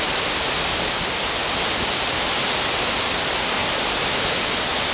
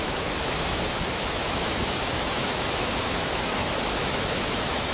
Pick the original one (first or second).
first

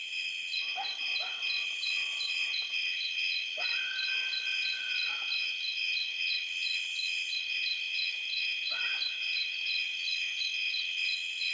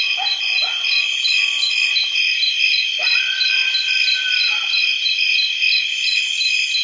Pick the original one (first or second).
second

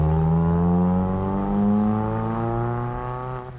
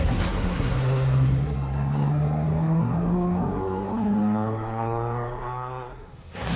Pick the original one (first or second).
first